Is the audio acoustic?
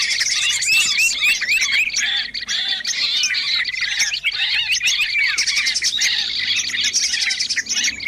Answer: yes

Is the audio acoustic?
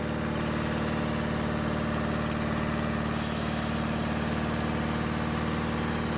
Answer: yes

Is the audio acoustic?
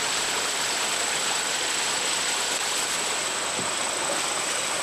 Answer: yes